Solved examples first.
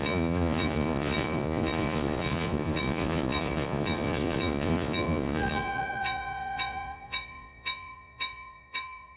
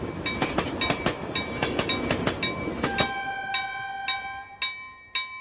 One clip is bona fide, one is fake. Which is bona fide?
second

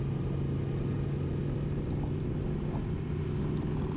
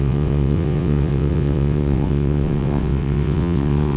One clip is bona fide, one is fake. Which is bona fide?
first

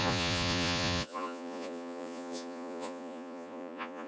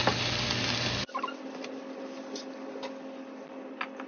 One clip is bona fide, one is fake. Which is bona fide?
second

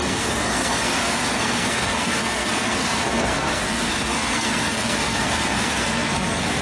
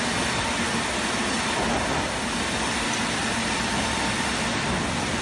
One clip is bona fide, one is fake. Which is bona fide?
second